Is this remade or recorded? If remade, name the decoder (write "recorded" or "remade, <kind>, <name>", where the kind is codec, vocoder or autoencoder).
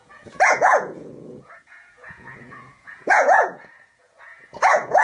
remade, vocoder, Vocos